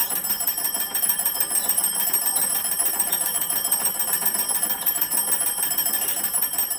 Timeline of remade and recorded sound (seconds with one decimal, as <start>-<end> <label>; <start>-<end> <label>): 0.0-6.8 remade